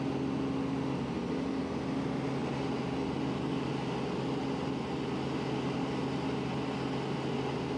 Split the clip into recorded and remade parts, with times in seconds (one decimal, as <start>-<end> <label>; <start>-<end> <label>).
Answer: 0.0-7.8 recorded